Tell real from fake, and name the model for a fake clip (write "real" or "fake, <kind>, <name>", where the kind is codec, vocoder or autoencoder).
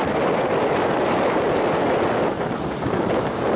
real